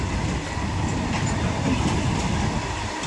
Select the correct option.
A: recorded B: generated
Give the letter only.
A